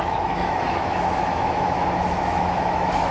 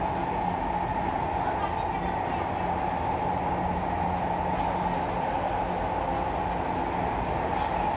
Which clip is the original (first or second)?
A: second